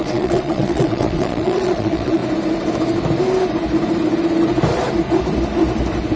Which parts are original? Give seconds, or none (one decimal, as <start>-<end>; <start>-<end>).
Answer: 2.2-6.2